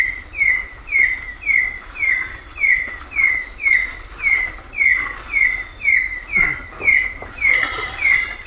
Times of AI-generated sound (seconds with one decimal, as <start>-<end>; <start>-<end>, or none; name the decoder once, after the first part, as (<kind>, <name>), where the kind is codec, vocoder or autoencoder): 0.0-4.9 (vocoder, BigVGAN v2); 6.4-8.5